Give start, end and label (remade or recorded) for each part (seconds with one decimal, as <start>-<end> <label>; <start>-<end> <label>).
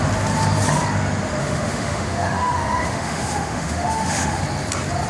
0.0-1.4 recorded; 1.4-4.4 remade; 4.4-5.1 recorded